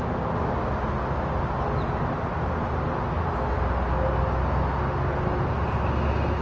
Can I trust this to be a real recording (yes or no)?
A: yes